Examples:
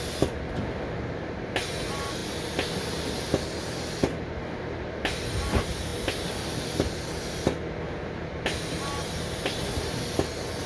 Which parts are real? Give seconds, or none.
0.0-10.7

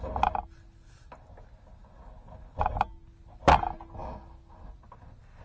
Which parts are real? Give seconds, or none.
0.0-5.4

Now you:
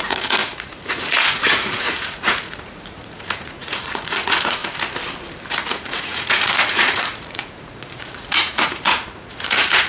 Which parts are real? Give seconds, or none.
4.6-5.6

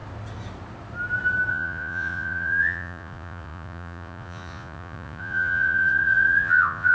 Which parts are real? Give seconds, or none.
0.0-1.5

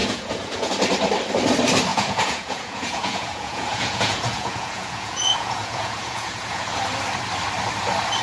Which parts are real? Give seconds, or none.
0.7-1.9; 6.8-8.2

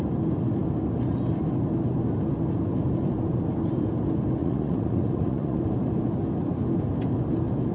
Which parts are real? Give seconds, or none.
0.0-4.4; 5.6-7.7